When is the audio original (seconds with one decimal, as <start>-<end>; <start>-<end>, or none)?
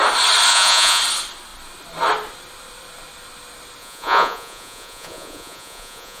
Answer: 0.0-0.5; 1.0-3.8